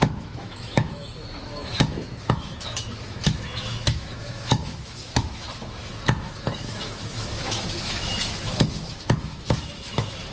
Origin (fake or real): fake